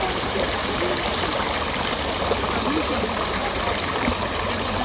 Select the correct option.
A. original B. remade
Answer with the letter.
A